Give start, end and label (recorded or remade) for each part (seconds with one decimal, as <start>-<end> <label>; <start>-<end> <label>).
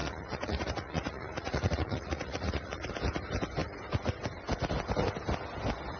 0.0-2.9 remade; 2.9-6.0 recorded